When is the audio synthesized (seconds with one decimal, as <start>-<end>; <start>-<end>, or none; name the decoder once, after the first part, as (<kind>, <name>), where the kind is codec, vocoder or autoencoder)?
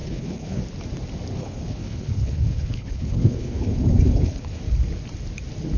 0.0-0.6 (codec, HILCodec); 1.4-4.6